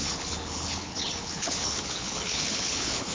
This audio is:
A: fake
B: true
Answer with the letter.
A